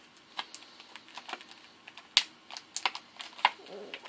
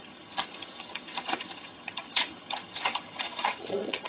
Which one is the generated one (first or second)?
second